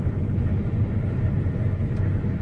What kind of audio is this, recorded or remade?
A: recorded